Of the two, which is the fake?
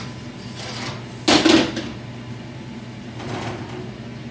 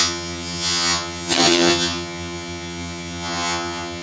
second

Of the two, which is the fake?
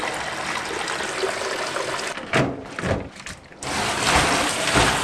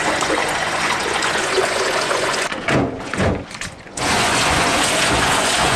second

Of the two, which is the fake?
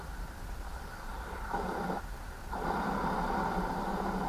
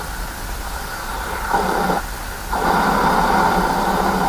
first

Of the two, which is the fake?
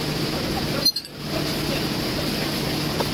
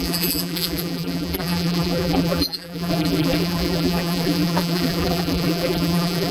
second